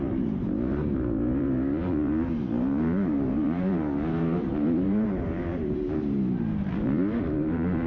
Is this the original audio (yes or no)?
no